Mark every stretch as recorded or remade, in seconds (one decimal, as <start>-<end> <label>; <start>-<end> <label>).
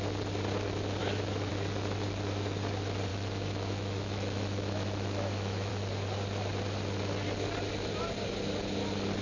0.0-1.0 recorded; 1.0-1.5 remade; 1.5-3.1 recorded; 3.1-5.7 remade; 5.7-9.2 recorded